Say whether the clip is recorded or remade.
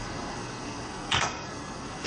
remade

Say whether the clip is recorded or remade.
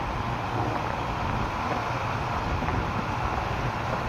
recorded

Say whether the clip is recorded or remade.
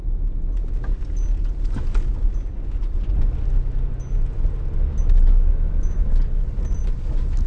recorded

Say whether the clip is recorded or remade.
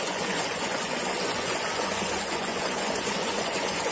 remade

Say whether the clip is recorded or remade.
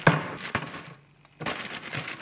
recorded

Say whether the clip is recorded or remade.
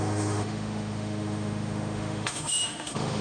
remade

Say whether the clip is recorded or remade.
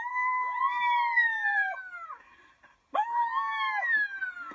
recorded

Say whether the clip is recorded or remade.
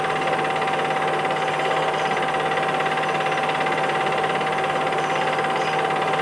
recorded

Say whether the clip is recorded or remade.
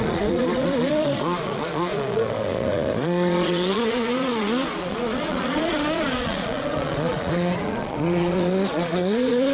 remade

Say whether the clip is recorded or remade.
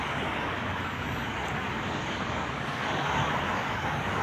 remade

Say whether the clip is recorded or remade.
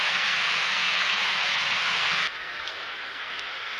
remade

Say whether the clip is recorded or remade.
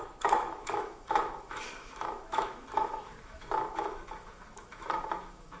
remade